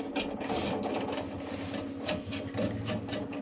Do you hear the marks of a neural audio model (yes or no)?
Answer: no